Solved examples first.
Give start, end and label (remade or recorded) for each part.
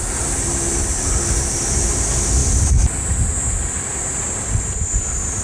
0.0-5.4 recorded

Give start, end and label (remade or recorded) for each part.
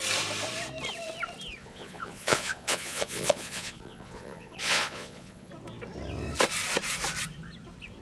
0.0-1.6 recorded; 1.6-5.5 remade; 5.5-8.0 recorded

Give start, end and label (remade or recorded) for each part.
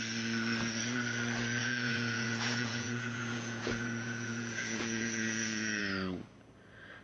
0.0-1.6 recorded; 1.6-5.8 remade; 5.8-7.0 recorded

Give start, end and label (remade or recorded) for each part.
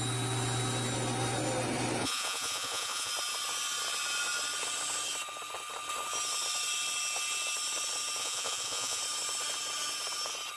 0.0-2.0 recorded; 2.0-3.1 remade; 3.1-8.2 recorded; 8.2-9.0 remade; 9.0-10.6 recorded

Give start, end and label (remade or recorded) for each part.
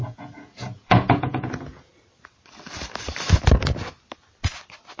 0.0-1.9 remade; 1.9-5.0 recorded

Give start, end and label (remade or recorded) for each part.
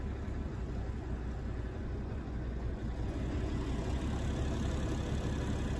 0.0-0.5 recorded; 0.5-4.0 remade; 4.0-5.8 recorded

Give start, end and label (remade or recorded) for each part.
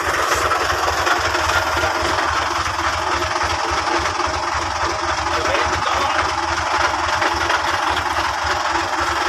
0.0-9.3 recorded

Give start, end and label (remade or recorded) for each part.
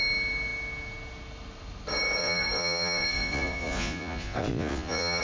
0.0-2.2 recorded; 2.2-5.2 remade